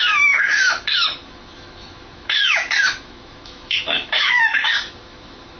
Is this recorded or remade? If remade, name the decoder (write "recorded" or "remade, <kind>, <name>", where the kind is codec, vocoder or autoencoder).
remade, autoencoder, DAC-VAE